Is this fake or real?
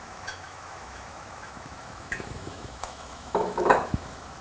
fake